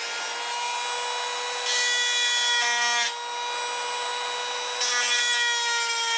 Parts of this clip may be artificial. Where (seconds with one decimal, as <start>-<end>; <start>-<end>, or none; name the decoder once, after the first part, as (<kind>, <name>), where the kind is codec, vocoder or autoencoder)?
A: none